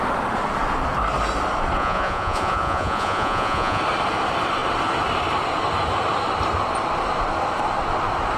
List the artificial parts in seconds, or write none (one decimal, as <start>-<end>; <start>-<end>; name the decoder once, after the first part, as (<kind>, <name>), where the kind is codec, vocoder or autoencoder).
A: 1.8-3.8 (vocoder, Vocos)